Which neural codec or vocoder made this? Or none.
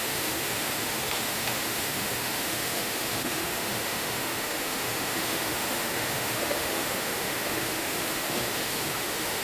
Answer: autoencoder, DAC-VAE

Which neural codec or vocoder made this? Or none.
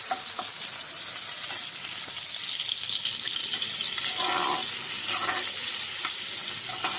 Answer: none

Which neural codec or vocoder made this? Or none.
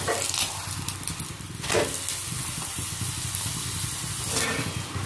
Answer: none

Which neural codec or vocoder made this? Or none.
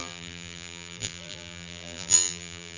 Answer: vocoder, BigVGAN v2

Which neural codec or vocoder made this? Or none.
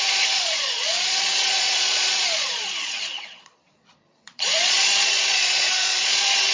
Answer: vocoder, Vocos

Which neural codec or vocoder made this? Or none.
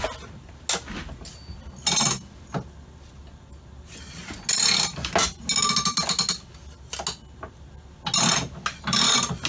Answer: none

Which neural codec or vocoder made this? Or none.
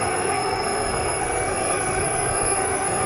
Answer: codec, SNAC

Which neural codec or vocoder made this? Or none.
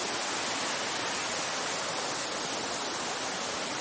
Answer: none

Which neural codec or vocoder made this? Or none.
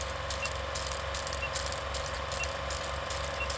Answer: none